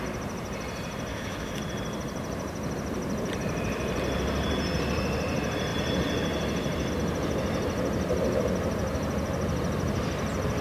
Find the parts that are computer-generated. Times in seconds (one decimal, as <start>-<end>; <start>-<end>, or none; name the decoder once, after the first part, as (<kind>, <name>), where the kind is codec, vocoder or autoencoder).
1.1-1.6 (autoencoder, DAC-VAE)